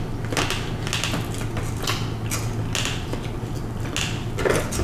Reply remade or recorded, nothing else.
recorded